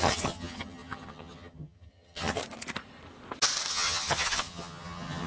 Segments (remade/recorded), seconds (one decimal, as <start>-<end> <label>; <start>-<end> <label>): 0.0-2.4 remade; 2.4-3.7 recorded; 3.7-5.3 remade